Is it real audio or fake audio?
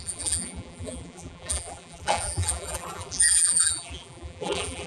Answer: fake